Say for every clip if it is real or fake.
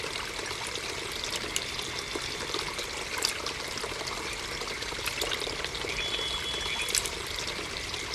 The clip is real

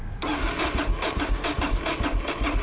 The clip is real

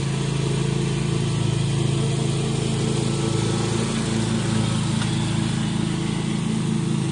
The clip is real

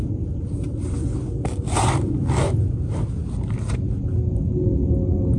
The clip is real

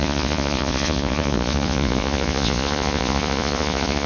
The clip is fake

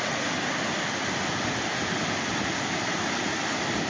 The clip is real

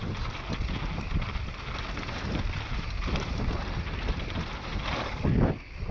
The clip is real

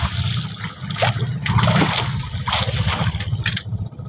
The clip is real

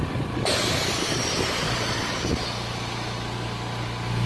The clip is real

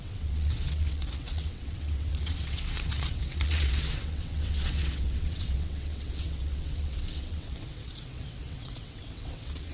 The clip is fake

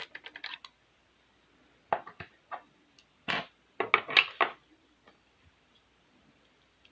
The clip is real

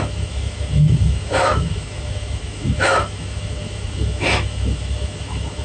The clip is fake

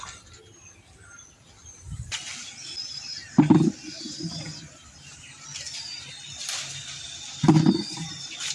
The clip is real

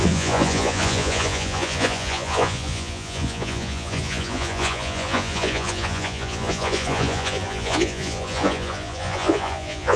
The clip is fake